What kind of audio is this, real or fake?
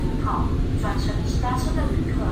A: fake